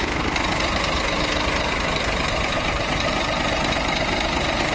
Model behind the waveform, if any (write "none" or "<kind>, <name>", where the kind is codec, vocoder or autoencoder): none